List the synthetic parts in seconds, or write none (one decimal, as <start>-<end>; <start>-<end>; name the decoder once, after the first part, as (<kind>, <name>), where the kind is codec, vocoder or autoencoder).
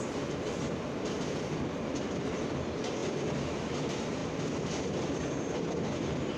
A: none